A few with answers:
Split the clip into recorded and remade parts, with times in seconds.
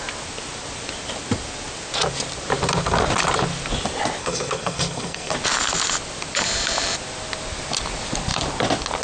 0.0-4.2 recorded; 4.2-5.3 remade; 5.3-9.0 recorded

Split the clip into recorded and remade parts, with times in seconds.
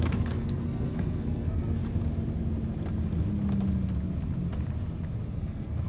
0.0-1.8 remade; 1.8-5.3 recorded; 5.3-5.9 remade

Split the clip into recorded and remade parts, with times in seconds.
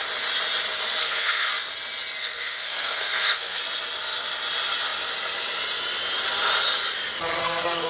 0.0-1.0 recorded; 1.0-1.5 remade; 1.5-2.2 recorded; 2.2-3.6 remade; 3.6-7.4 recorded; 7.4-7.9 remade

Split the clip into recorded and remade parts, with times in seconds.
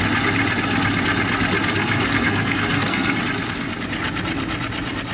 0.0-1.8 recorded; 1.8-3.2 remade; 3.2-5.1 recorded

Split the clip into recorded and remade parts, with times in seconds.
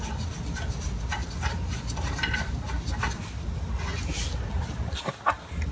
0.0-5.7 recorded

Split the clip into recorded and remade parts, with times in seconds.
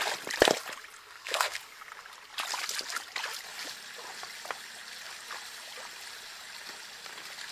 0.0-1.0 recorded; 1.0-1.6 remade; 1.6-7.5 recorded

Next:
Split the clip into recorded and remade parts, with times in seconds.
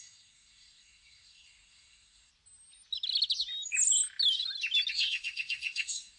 0.0-2.3 remade; 2.3-4.9 recorded; 4.9-6.2 remade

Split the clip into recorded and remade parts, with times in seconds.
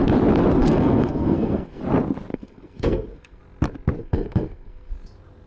0.0-0.6 recorded; 0.6-1.8 remade; 1.8-2.3 recorded; 2.3-3.4 remade; 3.4-4.0 recorded; 4.0-4.9 remade; 4.9-5.5 recorded